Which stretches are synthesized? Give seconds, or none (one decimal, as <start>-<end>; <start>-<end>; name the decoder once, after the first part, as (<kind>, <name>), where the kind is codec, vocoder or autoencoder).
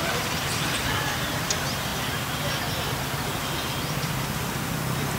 none